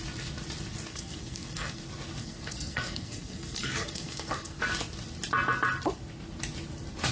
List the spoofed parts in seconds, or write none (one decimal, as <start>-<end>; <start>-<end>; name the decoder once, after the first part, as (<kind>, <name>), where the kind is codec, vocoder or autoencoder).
0.9-1.8 (codec, SNAC); 2.2-4.6